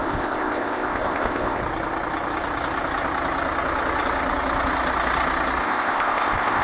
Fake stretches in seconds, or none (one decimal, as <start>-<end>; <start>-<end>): 0.0-1.6; 5.6-6.6